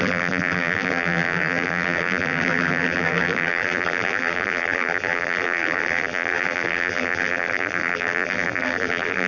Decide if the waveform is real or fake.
fake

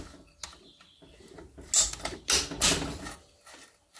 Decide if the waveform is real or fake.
real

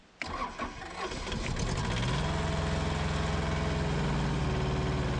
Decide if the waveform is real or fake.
real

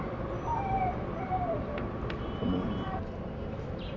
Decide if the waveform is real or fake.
fake